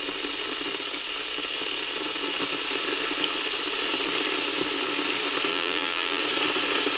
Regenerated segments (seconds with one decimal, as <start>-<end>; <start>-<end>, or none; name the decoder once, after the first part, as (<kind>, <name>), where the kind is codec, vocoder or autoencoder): 5.5-6.2 (vocoder, BigVGAN v2)